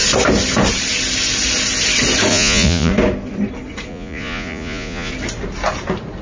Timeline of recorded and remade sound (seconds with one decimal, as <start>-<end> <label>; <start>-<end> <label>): 0.0-2.3 recorded; 2.3-2.9 remade; 2.9-3.9 recorded; 3.9-5.1 remade; 5.1-6.2 recorded

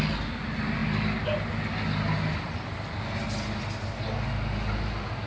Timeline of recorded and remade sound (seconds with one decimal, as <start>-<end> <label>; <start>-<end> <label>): 0.0-5.3 recorded

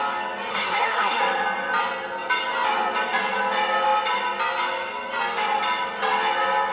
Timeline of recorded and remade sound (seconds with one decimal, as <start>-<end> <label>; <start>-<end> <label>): 0.0-0.5 recorded; 0.5-1.2 remade; 1.2-6.7 recorded

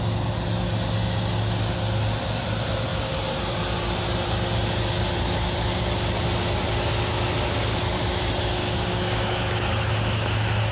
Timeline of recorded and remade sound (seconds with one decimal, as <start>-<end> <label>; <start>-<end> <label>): 0.0-8.6 recorded; 8.6-9.9 remade; 9.9-10.7 recorded

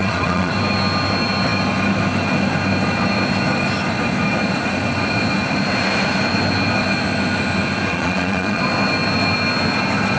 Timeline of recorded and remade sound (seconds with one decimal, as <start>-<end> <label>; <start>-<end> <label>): 0.0-0.5 remade; 0.5-7.9 recorded; 7.9-8.6 remade; 8.6-10.2 recorded

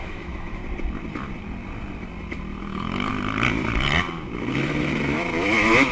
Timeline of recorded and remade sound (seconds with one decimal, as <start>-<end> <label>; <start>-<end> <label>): 0.0-0.6 remade; 0.6-2.6 recorded; 2.6-3.1 remade; 3.1-4.5 recorded; 4.5-5.9 remade

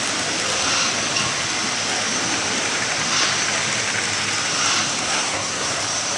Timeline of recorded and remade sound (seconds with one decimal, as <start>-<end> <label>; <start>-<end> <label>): 0.0-5.0 recorded; 5.0-5.8 remade; 5.8-6.2 recorded

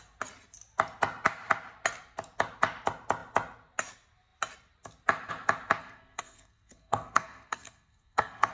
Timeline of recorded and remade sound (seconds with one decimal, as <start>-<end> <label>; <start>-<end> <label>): 0.0-5.8 recorded; 5.8-8.5 remade